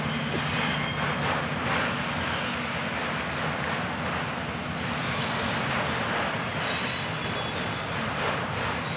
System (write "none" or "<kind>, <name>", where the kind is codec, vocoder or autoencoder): none